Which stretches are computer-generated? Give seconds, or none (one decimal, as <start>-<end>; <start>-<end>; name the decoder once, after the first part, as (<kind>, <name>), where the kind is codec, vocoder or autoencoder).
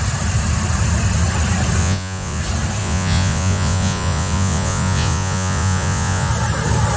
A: 1.8-2.4 (vocoder, Vocos); 2.8-6.3